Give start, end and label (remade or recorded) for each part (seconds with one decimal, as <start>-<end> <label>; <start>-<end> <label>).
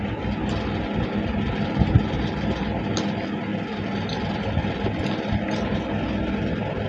0.0-6.9 recorded